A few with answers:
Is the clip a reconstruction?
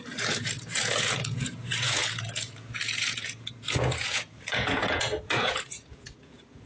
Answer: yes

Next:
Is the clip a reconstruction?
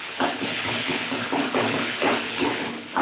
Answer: yes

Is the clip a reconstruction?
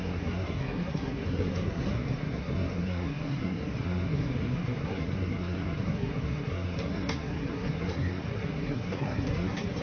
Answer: yes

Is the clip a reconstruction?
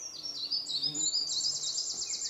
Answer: no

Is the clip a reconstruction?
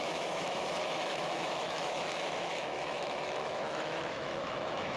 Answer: yes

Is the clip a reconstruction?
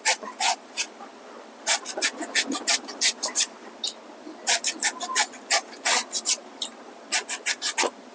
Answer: no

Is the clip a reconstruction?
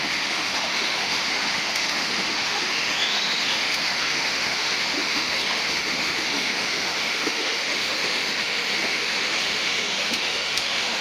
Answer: yes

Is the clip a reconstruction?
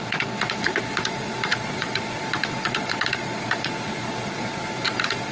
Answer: yes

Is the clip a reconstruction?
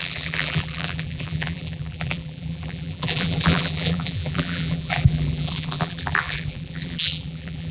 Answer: yes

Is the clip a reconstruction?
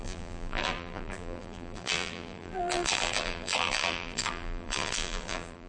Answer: yes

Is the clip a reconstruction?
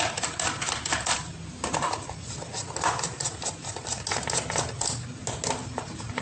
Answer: no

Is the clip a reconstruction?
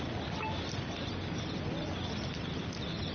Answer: no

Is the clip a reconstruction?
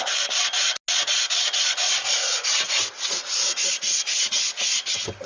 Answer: no